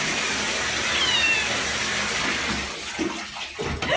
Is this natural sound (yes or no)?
yes